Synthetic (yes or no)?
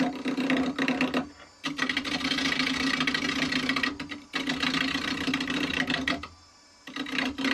no